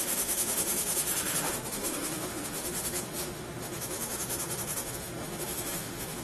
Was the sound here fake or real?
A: fake